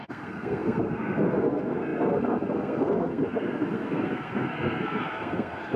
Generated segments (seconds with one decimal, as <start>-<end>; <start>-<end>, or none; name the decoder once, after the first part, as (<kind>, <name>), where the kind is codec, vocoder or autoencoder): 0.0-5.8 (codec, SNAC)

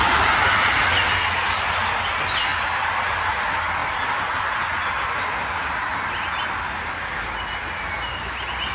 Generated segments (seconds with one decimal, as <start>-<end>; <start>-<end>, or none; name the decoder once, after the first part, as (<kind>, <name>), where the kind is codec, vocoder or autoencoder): none

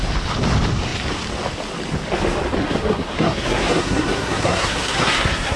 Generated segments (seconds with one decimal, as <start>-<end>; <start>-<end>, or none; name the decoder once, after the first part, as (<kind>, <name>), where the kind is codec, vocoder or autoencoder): 2.6-5.6 (codec, SNAC)

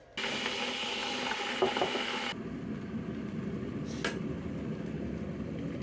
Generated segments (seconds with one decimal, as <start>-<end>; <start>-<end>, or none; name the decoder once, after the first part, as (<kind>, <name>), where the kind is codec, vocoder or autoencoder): none

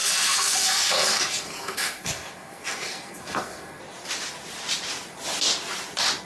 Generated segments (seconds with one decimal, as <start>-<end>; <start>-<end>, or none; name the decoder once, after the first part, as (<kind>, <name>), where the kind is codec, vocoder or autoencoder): 0.0-3.8 (codec, SNAC)

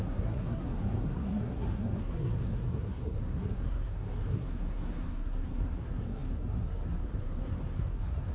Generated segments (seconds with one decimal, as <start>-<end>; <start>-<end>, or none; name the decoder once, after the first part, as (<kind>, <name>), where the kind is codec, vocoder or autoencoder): 0.0-8.3 (codec, SNAC)